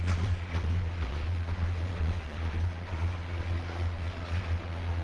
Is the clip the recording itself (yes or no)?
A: no